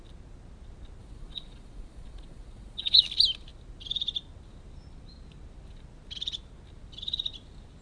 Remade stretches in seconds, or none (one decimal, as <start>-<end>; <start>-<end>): 1.0-3.0